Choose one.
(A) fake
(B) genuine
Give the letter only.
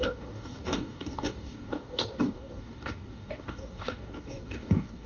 A